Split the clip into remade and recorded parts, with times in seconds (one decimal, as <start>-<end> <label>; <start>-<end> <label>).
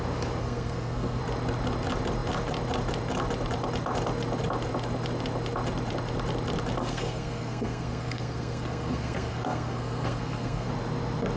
0.0-0.4 recorded; 0.4-1.2 remade; 1.2-6.8 recorded; 6.8-10.7 remade; 10.7-11.4 recorded